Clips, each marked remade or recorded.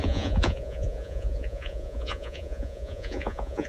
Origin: remade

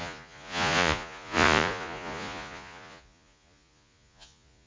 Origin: remade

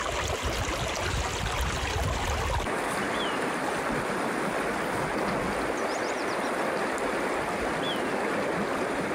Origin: recorded